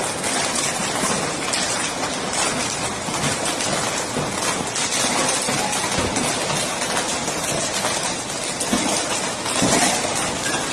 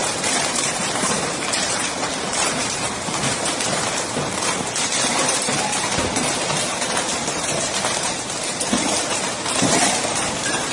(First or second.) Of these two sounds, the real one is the first